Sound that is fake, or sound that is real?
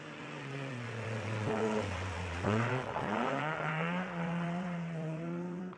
fake